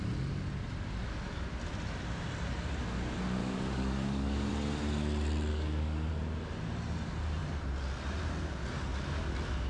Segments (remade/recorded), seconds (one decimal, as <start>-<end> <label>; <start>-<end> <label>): 0.0-3.4 recorded; 3.4-4.5 remade; 4.5-5.5 recorded; 5.5-6.1 remade; 6.1-9.7 recorded